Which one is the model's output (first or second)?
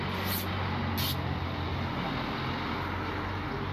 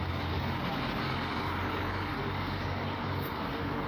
second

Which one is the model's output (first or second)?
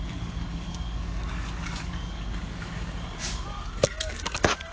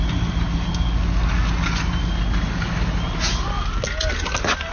first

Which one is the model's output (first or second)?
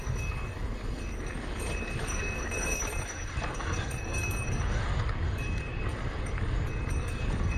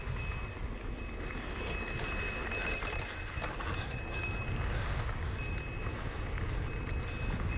first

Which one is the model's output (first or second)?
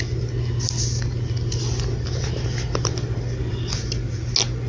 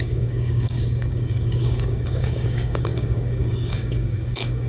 second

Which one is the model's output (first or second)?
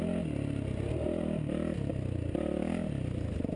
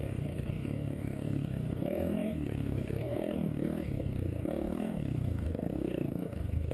second